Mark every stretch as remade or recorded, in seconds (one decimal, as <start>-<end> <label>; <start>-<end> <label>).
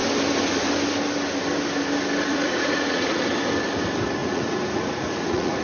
0.0-2.3 recorded; 2.3-3.2 remade; 3.2-4.2 recorded; 4.2-5.6 remade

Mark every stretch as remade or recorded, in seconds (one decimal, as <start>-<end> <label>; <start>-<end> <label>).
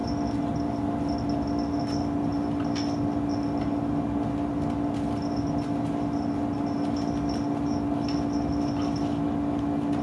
0.0-10.0 recorded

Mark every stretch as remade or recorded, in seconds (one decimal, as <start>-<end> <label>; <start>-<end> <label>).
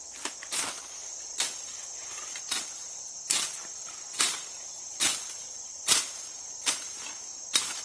0.0-7.8 recorded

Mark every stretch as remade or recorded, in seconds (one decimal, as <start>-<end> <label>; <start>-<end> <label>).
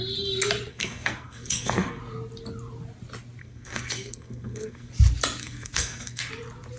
0.0-0.7 recorded; 0.7-2.0 remade; 2.0-3.4 recorded; 3.4-4.9 remade; 4.9-5.4 recorded; 5.4-6.3 remade; 6.3-6.8 recorded